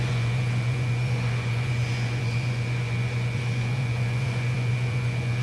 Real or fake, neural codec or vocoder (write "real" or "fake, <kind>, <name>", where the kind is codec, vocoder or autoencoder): fake, vocoder, Vocos